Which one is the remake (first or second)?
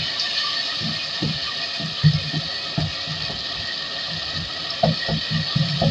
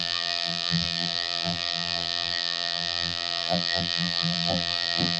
second